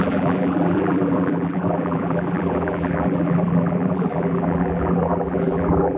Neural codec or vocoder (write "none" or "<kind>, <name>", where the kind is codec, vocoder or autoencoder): vocoder, BigVGAN v2